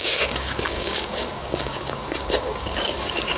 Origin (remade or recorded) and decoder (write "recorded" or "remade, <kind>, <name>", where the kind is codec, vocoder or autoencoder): remade, codec, DAC